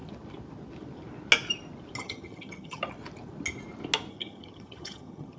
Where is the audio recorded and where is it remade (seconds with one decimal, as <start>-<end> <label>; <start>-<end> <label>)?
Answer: 0.0-2.0 recorded; 2.0-2.8 remade; 2.8-4.1 recorded; 4.1-5.4 remade